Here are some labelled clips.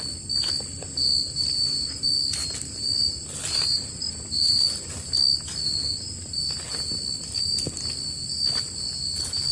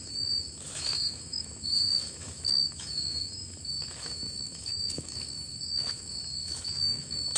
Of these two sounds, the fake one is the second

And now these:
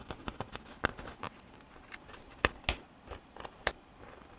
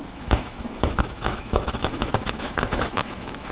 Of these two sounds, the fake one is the second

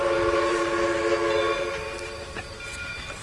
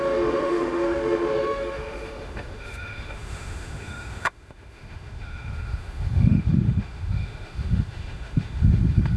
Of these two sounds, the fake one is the second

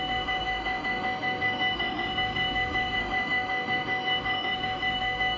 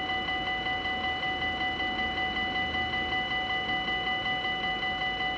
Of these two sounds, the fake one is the first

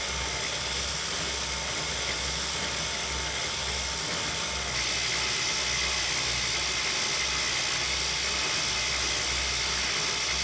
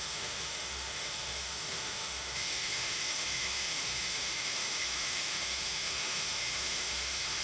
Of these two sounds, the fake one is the second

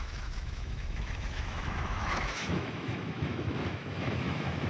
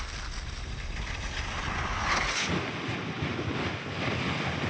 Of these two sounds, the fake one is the first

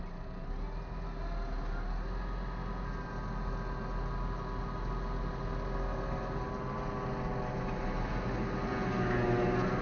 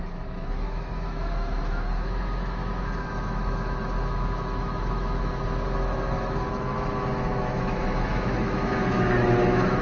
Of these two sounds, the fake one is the second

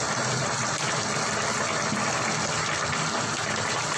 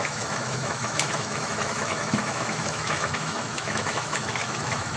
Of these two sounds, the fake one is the second